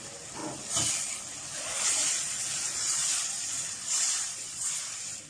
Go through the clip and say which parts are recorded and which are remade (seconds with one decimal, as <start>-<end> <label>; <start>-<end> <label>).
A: 0.0-1.5 recorded; 1.5-4.7 remade; 4.7-5.3 recorded